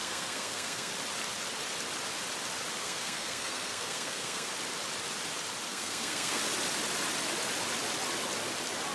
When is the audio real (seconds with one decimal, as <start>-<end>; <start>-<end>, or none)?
0.9-2.8; 4.5-5.7; 6.4-8.9